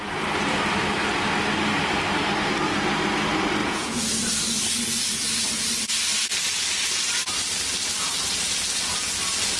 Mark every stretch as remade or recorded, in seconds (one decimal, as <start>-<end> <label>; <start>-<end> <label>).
0.0-3.6 recorded; 3.6-4.1 remade; 4.1-9.6 recorded